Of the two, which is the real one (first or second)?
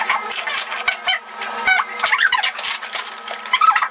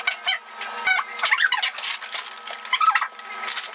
second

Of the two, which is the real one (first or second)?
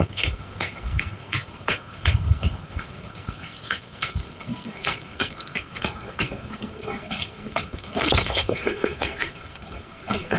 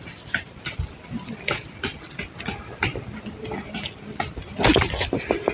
second